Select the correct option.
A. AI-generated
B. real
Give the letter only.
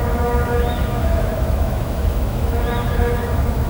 A